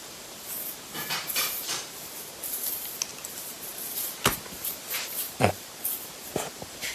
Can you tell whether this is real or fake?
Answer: fake